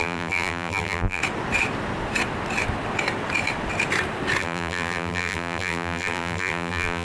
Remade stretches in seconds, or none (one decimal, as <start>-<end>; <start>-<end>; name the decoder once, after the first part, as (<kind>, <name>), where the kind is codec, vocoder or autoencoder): 0.0-1.2 (vocoder, BigVGAN v2); 4.4-7.0